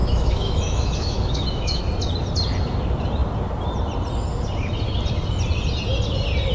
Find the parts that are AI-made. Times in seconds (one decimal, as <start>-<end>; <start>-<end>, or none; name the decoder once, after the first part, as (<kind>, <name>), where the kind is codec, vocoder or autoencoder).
0.0-1.8 (autoencoder, DAC-VAE)